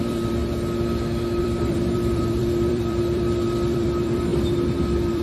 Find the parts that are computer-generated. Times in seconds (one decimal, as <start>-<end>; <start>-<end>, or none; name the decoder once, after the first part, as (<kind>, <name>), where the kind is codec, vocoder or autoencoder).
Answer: 0.0-0.4 (vocoder, BigVGAN v2); 1.4-4.3; 4.8-5.2